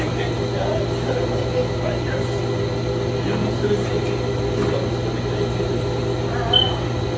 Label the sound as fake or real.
real